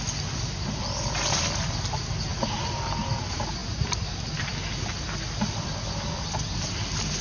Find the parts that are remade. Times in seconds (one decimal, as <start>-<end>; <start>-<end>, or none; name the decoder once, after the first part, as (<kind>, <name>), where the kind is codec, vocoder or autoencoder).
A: none